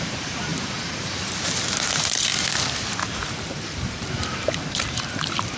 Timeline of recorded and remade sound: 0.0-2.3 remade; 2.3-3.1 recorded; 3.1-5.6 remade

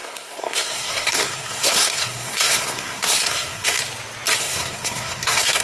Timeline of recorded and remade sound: 0.0-3.8 remade; 3.8-4.4 recorded; 4.4-5.6 remade